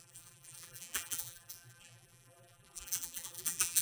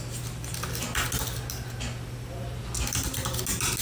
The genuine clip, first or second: second